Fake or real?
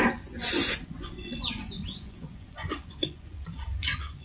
fake